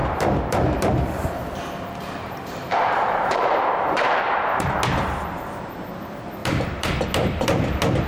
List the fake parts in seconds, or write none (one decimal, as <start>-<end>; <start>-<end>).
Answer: 0.0-4.7; 6.4-6.9